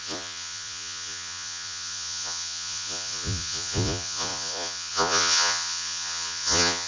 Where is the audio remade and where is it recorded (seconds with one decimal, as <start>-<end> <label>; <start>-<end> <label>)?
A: 0.0-6.9 remade

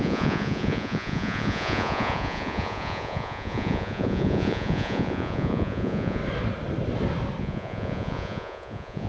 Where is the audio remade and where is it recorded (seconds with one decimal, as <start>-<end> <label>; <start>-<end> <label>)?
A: 0.0-6.2 remade; 6.2-7.4 recorded; 7.4-9.1 remade

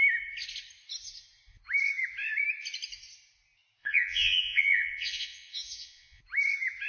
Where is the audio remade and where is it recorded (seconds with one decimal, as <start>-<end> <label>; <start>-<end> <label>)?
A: 0.0-3.8 recorded; 3.8-6.2 remade; 6.2-6.9 recorded

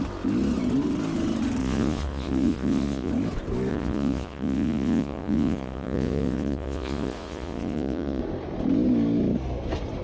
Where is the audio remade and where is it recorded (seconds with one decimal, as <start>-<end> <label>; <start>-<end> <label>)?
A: 0.0-1.6 recorded; 1.6-3.1 remade; 3.1-3.7 recorded; 3.7-8.2 remade; 8.2-10.0 recorded

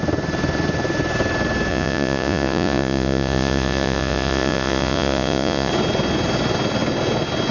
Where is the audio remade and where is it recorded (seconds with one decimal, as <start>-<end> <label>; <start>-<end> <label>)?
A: 0.0-1.7 recorded; 1.7-5.7 remade; 5.7-7.5 recorded

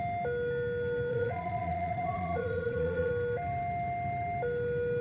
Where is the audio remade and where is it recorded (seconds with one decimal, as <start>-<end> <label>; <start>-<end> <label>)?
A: 0.0-1.1 recorded; 1.1-3.1 remade; 3.1-5.0 recorded